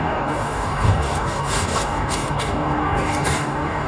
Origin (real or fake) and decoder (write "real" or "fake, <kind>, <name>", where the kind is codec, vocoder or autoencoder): fake, codec, DAC